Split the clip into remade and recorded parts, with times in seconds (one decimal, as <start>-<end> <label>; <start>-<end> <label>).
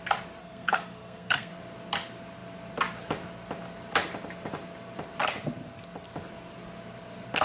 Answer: 0.0-0.4 recorded; 0.4-1.5 remade; 1.5-7.4 recorded